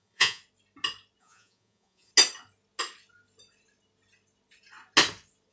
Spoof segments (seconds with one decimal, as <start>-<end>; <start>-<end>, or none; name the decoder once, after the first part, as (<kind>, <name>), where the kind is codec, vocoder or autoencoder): 0.0-0.4 (vocoder, Vocos); 1.2-2.1